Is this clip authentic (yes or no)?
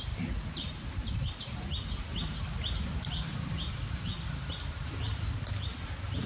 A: yes